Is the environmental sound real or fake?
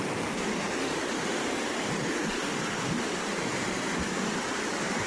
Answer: real